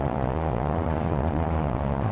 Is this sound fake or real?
fake